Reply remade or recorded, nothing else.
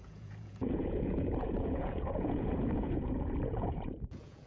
remade